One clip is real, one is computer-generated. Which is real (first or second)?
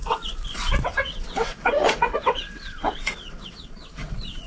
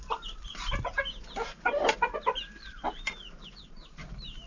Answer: second